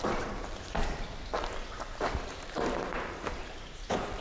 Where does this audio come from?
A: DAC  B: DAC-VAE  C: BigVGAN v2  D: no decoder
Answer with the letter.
C